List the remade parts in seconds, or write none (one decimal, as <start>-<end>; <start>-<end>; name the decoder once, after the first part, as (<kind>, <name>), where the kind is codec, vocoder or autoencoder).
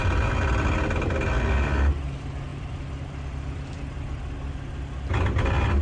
2.5-3.8 (vocoder, BigVGAN v2)